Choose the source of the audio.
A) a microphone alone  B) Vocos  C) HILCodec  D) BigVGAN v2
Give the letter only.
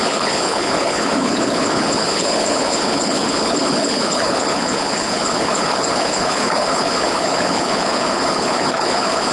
C